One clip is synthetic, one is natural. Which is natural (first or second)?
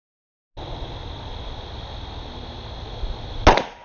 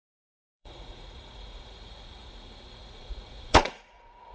first